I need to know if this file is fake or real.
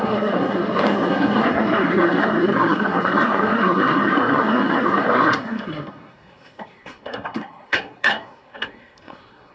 fake